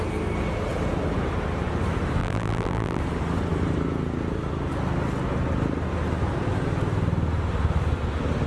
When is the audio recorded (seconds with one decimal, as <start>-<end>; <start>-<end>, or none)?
0.0-2.2; 3.0-8.5